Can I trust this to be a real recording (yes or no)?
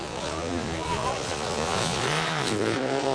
no